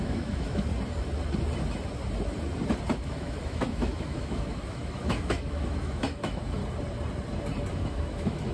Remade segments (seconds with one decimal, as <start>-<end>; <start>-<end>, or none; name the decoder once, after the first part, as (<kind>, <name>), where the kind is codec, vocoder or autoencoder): 0.0-0.7 (autoencoder, DAC-VAE); 3.0-6.6; 7.7-8.5